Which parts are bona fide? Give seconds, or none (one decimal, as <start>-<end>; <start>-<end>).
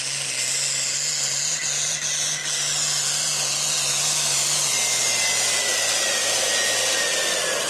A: 0.0-7.7